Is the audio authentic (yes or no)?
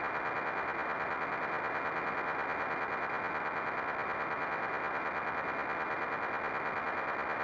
yes